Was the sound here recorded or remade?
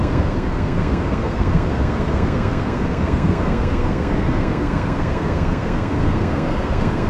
remade